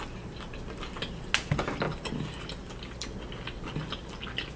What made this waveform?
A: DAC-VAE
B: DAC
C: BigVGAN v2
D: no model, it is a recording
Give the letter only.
D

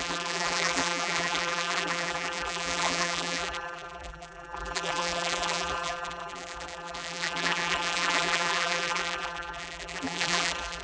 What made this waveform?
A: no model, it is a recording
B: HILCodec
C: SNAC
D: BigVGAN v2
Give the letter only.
D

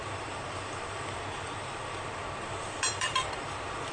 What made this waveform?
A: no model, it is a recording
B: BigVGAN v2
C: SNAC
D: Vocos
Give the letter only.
B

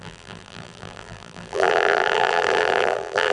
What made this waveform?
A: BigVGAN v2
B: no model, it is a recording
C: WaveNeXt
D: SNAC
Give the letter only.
A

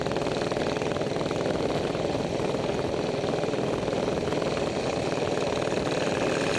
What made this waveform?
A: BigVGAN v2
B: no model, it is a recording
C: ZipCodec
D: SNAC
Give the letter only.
B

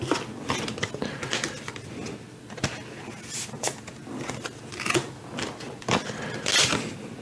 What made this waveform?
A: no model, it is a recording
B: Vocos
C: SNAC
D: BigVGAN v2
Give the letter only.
A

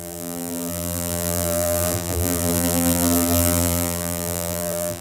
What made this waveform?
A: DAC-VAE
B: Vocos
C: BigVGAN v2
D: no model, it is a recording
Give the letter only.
C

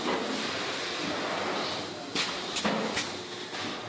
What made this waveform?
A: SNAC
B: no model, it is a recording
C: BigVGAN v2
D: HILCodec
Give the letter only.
B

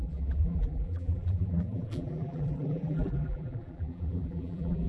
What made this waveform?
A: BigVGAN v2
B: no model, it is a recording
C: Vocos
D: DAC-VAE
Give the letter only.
A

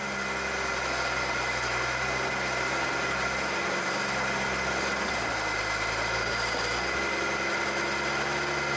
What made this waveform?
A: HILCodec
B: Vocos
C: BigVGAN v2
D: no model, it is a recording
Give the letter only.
D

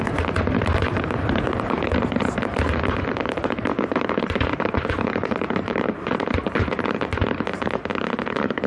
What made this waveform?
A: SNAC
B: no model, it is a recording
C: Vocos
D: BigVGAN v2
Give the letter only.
D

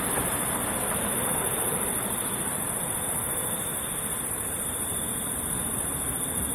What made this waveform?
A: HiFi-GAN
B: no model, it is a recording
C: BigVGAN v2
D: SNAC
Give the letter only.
C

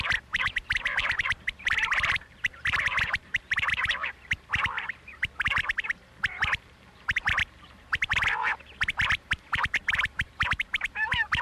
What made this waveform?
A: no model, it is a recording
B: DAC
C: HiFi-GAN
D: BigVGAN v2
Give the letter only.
D